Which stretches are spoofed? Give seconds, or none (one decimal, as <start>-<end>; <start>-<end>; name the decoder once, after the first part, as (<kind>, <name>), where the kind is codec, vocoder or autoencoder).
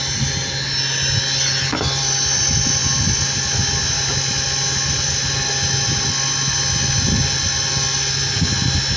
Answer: none